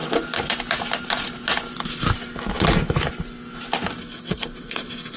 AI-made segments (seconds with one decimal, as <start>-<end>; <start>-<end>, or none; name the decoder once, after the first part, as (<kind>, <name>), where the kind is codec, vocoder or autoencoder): 4.0-5.2 (codec, SNAC)